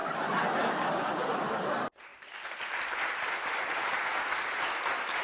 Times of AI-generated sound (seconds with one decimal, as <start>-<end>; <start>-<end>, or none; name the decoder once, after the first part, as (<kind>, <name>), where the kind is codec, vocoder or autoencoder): none